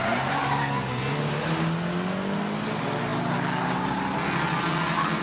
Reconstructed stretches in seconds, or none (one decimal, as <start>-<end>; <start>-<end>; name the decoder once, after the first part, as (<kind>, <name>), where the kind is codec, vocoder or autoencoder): 0.6-1.2 (codec, SNAC)

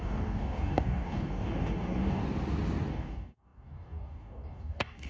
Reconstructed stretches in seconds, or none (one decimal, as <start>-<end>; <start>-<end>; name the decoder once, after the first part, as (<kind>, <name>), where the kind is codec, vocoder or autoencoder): 0.0-2.2 (codec, DAC); 2.9-5.1

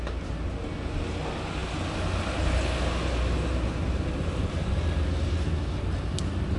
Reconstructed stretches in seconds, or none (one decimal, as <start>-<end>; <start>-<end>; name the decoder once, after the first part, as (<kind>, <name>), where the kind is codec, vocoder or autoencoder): none